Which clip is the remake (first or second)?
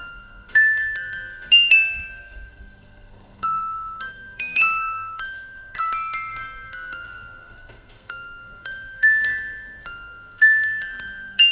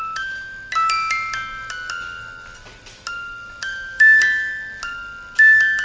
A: first